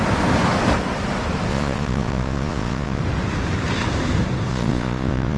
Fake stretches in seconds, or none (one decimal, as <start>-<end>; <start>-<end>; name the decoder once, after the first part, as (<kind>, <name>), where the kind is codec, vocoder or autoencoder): 1.5-3.0 (vocoder, Vocos); 4.5-5.4